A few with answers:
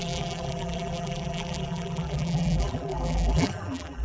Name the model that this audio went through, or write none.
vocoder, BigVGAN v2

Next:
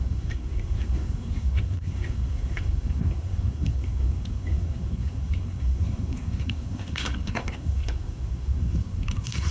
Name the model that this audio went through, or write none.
codec, SNAC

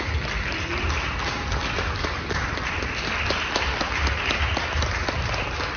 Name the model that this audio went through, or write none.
none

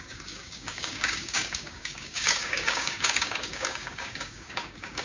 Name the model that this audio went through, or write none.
codec, DAC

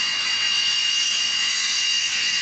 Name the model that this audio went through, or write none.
vocoder, WaveNeXt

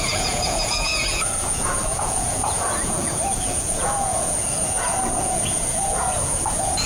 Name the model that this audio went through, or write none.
vocoder, Vocos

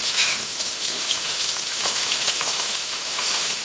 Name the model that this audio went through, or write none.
autoencoder, DAC-VAE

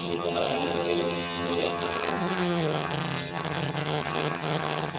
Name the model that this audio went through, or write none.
vocoder, HiFi-GAN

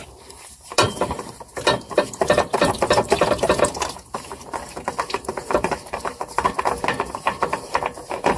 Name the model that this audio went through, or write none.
vocoder, BigVGAN v2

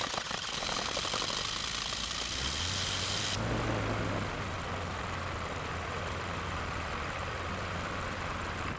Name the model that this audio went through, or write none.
none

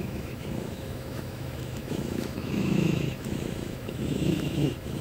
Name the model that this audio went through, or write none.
autoencoder, DAC-VAE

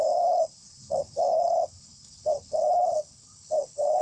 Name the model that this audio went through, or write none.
codec, HILCodec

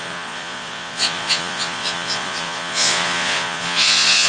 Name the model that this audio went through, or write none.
vocoder, Vocos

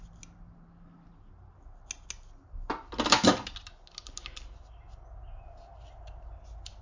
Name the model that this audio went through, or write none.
none